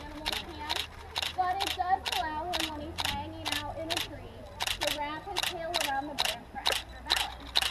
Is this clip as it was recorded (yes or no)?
yes